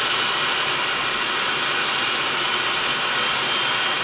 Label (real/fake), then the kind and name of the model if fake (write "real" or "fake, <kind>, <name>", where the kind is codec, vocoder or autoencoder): real